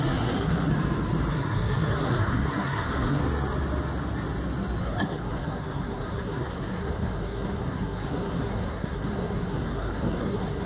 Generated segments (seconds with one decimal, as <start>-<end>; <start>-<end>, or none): 0.0-0.7; 1.3-3.2; 4.8-10.7